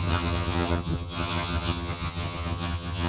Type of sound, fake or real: fake